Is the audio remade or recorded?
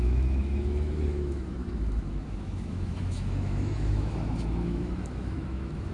remade